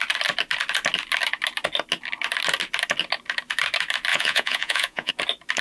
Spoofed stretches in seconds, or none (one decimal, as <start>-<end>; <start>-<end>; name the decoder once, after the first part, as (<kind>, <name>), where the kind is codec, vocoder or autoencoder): 4.1-5.1 (vocoder, Vocos)

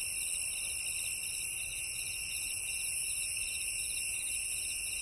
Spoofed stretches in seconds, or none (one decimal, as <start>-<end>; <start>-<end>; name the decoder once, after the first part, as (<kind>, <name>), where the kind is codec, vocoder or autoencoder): 1.7-5.0 (vocoder, Vocos)

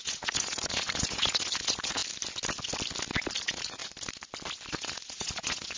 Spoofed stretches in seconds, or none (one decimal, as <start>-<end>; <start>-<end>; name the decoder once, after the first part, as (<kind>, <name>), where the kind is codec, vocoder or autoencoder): 0.0-2.0 (vocoder, Vocos); 3.4-3.8; 4.7-5.8

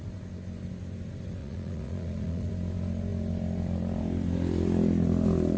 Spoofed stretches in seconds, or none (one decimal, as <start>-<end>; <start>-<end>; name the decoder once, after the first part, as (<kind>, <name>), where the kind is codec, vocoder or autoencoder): 1.4-2.5 (vocoder, Vocos)

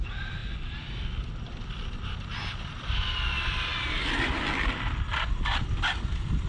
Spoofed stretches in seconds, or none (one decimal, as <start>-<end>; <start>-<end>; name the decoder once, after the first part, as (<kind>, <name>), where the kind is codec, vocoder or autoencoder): none

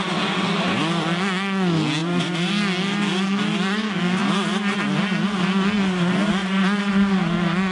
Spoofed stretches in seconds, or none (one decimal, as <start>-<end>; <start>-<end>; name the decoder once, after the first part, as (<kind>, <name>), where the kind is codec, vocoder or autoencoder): 2.0-2.5 (vocoder, Vocos); 6.4-6.9